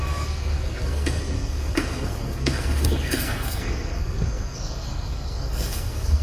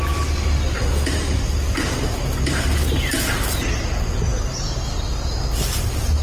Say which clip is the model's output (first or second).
first